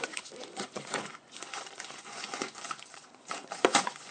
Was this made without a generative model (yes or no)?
no